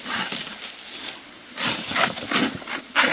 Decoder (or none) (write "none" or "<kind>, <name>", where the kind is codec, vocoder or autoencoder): none